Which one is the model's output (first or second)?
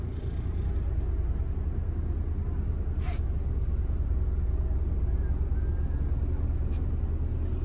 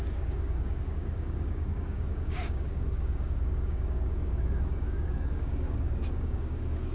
second